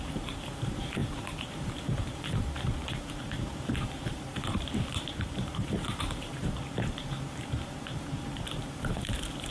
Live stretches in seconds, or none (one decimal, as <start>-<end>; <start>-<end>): none

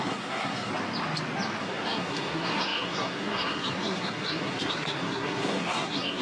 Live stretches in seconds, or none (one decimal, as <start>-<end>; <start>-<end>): 0.7-1.6

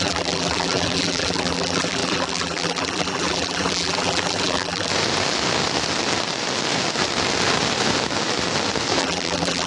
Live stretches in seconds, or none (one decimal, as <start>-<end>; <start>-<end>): 4.9-9.0

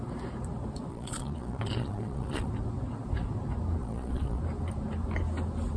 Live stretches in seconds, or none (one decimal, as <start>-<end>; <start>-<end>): 0.0-0.9; 2.5-3.8; 4.4-5.8

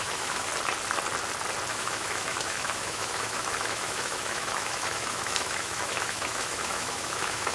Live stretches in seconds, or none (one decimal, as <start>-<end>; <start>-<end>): 0.5-1.7

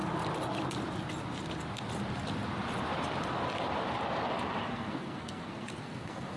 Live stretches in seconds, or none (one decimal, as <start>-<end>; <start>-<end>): 0.0-4.7

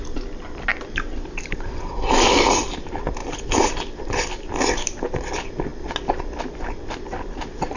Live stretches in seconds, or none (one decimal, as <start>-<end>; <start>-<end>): 0.0-7.8

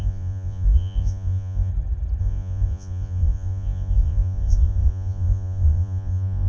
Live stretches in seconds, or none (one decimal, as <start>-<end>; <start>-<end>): 1.7-2.2